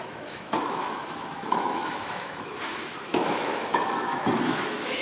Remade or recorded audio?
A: remade